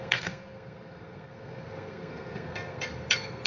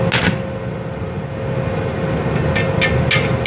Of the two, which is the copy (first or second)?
first